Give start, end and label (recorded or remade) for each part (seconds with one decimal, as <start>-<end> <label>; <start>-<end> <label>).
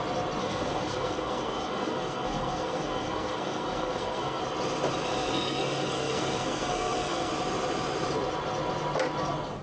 0.0-0.4 recorded; 0.4-4.4 remade; 4.4-5.1 recorded; 5.1-7.3 remade; 7.3-9.6 recorded